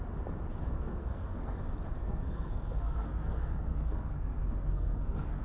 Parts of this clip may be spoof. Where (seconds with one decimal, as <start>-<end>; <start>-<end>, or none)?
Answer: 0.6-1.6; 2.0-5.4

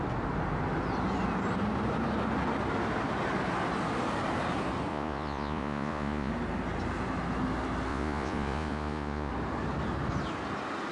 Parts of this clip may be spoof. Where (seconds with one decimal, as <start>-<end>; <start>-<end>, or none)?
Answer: 4.9-6.3; 7.9-9.3

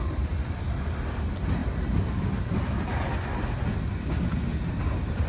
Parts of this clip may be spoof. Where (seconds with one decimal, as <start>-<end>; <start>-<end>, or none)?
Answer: none